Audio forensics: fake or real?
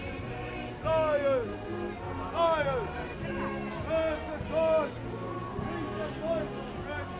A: real